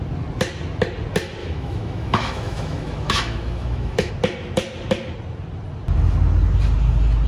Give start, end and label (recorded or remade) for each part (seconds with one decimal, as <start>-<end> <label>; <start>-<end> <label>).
0.0-1.4 recorded; 1.4-4.1 remade; 4.1-7.3 recorded